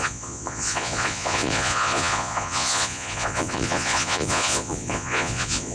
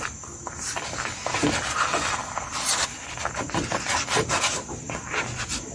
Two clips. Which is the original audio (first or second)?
second